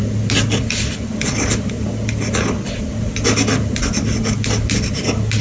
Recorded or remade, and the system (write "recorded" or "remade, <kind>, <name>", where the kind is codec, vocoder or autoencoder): recorded